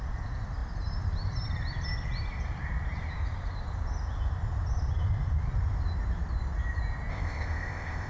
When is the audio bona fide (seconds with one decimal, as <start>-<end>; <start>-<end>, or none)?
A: 0.0-7.1